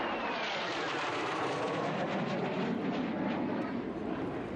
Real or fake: real